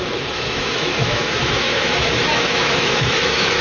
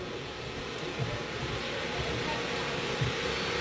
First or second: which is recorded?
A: second